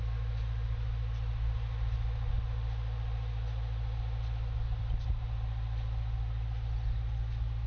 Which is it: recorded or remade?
recorded